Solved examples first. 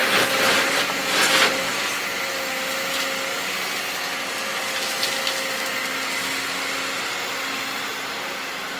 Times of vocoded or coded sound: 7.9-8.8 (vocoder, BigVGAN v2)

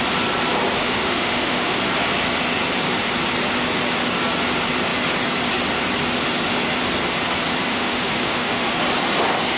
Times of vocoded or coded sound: 0.8-1.8 (autoencoder, DAC-VAE); 7.7-8.8

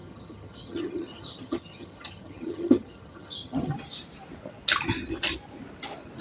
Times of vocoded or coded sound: 0.0-3.7 (vocoder, HiFi-GAN)

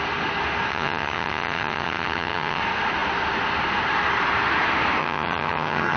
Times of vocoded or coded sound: 0.7-2.6 (vocoder, HiFi-GAN); 5.0-6.0

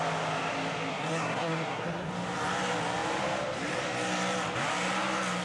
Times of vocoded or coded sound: 0.9-2.1 (codec, SNAC)

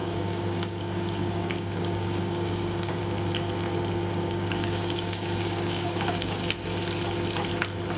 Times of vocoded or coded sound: 0.0-3.0 (codec, DAC); 4.3-6.4